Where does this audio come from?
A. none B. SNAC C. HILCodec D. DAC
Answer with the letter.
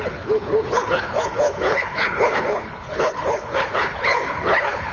C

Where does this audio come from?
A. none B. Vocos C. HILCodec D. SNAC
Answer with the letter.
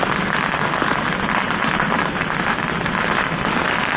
A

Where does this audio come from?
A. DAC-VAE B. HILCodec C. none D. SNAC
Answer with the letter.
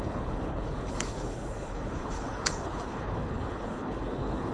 B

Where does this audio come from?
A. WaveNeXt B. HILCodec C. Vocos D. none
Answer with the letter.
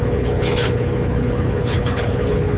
B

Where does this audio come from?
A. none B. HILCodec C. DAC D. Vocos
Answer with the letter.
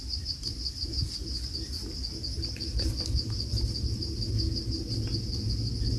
A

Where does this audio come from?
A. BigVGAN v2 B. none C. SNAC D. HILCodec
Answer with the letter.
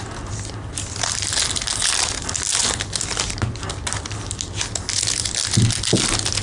B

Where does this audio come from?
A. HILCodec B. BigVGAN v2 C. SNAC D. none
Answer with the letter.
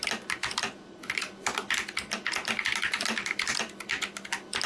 D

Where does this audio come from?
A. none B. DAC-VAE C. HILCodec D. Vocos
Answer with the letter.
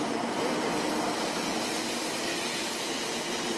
A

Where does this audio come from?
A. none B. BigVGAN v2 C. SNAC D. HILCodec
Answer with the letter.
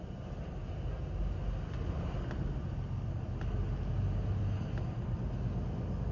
A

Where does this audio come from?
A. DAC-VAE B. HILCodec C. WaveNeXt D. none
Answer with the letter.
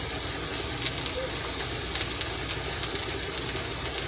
D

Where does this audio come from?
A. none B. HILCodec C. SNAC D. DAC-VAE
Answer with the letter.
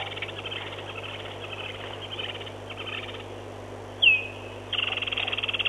A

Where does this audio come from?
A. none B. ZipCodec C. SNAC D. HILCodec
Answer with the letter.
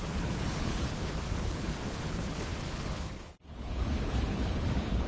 D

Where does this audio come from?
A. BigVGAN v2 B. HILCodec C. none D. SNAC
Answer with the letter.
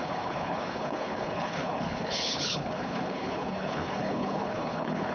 B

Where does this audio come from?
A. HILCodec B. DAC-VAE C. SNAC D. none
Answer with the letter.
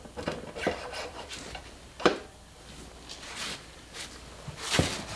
D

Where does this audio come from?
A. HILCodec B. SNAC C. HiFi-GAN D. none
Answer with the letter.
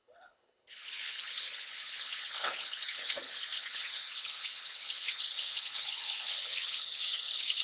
A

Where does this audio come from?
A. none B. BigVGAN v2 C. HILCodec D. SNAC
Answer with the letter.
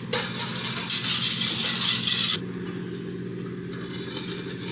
A